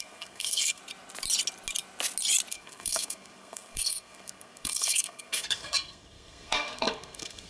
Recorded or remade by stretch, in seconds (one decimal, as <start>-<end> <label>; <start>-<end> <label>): 0.0-0.8 remade; 0.8-2.5 recorded; 2.5-7.5 remade